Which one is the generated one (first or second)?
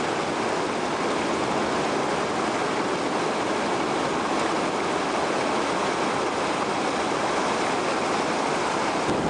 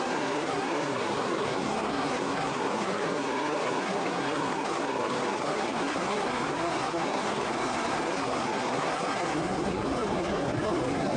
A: second